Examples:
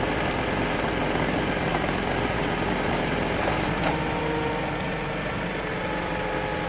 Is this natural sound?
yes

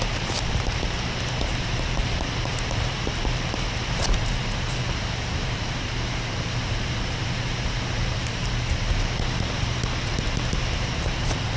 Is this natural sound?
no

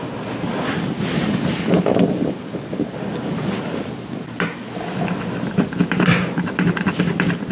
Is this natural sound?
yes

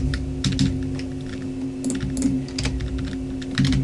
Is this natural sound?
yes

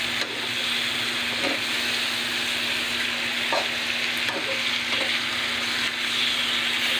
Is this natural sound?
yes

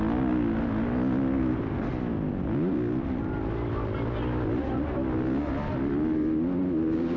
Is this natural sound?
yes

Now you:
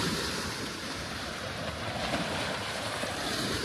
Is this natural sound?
no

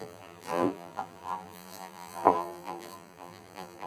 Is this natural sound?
no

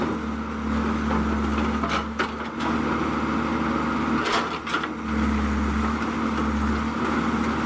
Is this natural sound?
yes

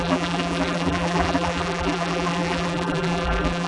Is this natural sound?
no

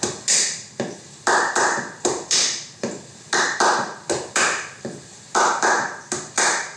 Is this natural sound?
no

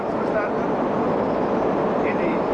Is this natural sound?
yes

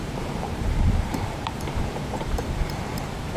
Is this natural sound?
no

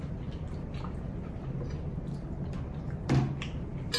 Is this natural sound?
yes